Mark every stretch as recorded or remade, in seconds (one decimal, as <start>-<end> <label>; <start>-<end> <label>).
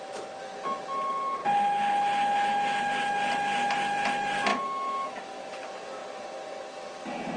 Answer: 0.0-4.5 recorded; 4.5-5.5 remade; 5.5-7.4 recorded